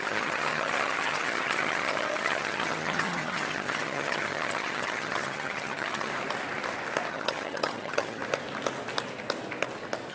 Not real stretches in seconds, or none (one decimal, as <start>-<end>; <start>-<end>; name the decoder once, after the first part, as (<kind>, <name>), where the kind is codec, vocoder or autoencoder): 0.0-6.1 (vocoder, HiFi-GAN); 7.1-8.2

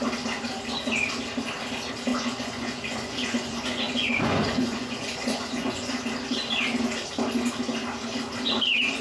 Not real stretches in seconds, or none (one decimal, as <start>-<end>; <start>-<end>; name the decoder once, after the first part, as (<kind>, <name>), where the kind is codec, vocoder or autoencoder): 2.1-6.0 (vocoder, Vocos)

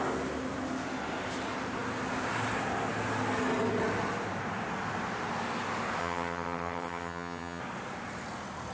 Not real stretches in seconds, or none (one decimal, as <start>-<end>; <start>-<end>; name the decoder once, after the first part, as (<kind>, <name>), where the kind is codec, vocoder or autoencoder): 6.0-7.6 (vocoder, HiFi-GAN)